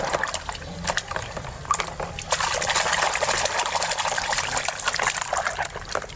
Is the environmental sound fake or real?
real